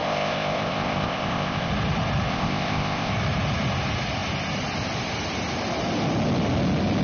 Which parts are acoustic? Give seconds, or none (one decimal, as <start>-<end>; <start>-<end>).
1.7-2.3; 3.1-7.0